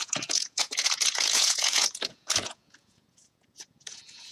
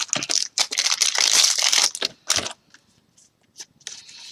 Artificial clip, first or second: first